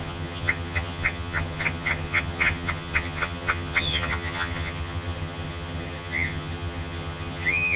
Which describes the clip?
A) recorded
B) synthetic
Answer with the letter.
B